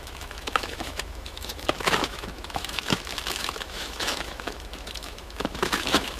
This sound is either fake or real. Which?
fake